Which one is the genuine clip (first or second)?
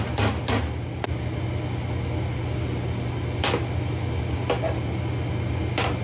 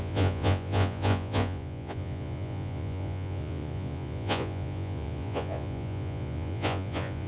first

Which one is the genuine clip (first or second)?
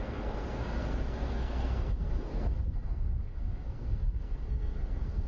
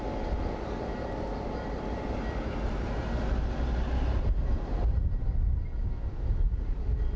second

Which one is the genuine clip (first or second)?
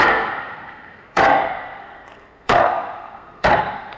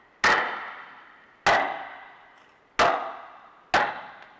second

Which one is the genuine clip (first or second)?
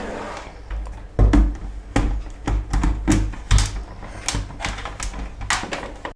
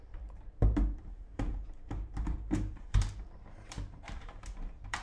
first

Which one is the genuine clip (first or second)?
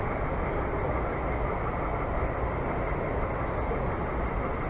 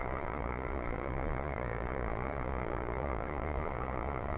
first